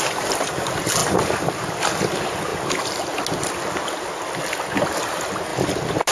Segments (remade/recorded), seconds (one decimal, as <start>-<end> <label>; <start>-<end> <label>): 0.0-6.1 recorded

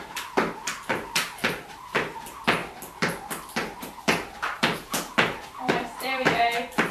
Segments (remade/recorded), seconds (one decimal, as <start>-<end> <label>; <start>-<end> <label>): 0.0-2.6 remade; 2.6-3.8 recorded; 3.8-6.9 remade

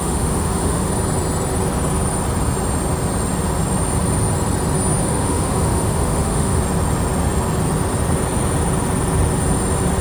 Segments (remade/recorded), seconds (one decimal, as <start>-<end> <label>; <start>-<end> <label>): 0.0-0.9 remade; 0.9-5.0 recorded; 5.0-6.6 remade; 6.6-10.0 recorded

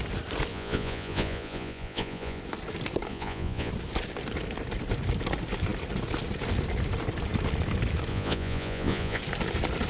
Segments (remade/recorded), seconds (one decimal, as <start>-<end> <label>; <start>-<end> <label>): 0.0-0.5 recorded; 0.5-2.4 remade; 2.4-3.1 recorded; 3.1-3.7 remade; 3.7-8.1 recorded; 8.1-9.2 remade; 9.2-9.9 recorded

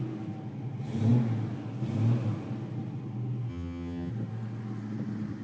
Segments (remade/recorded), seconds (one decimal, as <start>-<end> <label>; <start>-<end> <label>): 0.0-3.5 recorded; 3.5-4.1 remade; 4.1-5.4 recorded

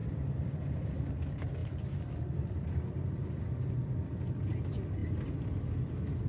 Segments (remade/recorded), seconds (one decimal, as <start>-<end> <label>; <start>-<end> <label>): 0.0-1.1 remade; 1.1-1.6 recorded; 1.6-3.4 remade; 3.4-6.3 recorded

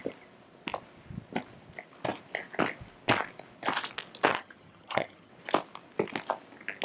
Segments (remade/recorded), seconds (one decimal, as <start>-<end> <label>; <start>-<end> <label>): 0.0-4.3 recorded; 4.3-5.3 remade; 5.3-6.8 recorded

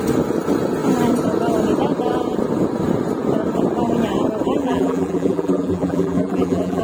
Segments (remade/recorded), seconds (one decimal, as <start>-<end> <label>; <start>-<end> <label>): 0.0-4.6 recorded; 4.6-6.8 remade